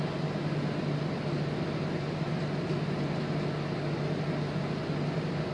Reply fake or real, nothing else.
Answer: real